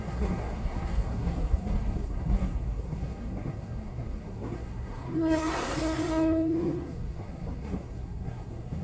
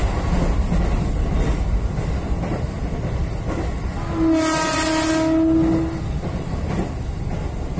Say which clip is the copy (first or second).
first